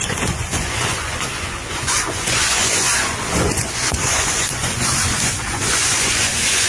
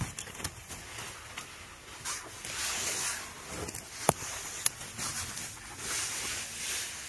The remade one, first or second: first